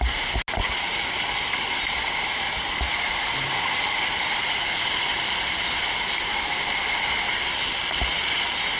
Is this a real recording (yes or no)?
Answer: yes